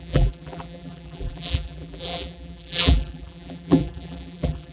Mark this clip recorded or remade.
remade